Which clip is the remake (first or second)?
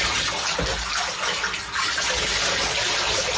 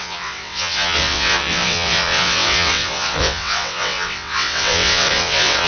second